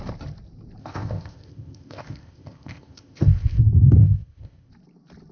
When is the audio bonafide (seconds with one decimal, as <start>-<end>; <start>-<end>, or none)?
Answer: 0.0-0.8; 3.6-4.0; 4.7-5.3